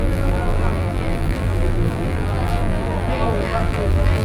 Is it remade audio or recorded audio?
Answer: remade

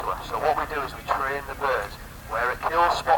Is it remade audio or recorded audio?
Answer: recorded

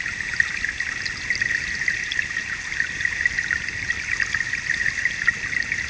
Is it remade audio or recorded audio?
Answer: recorded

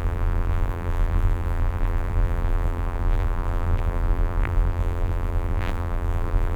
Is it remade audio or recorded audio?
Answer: remade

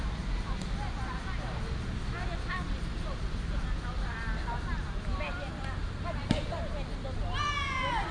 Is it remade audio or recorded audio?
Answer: recorded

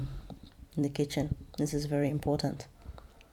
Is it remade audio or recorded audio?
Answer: remade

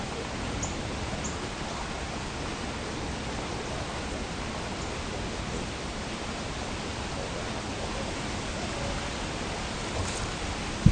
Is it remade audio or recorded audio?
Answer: recorded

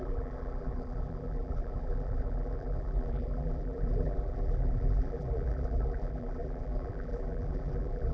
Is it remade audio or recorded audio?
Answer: remade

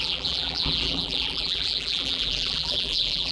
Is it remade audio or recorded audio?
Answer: remade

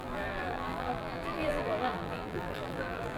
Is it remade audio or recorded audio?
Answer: remade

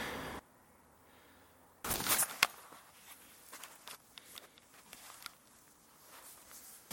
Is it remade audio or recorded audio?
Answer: recorded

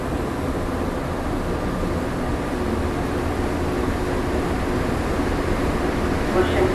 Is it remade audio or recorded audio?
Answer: recorded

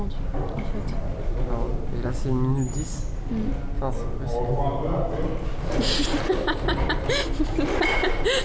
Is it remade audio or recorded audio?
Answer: recorded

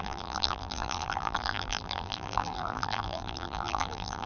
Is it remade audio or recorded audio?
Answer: remade